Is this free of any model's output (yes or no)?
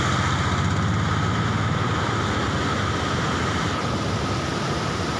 yes